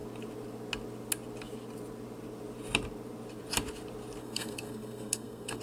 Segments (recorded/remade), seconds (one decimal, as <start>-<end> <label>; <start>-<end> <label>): 0.0-4.2 recorded; 4.2-5.6 remade